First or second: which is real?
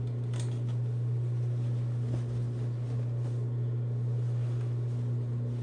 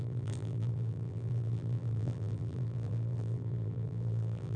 first